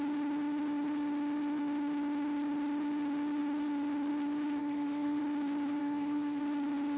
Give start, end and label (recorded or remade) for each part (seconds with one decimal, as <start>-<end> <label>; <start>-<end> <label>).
0.0-4.6 recorded; 4.6-5.2 remade; 5.2-5.8 recorded; 5.8-6.4 remade; 6.4-7.0 recorded